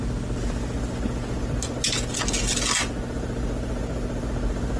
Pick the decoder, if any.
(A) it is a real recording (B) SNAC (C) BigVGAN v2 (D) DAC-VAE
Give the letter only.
A